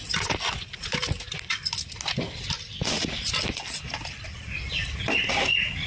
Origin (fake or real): real